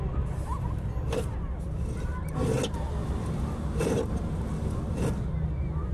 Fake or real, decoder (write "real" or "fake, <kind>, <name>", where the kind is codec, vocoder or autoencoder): real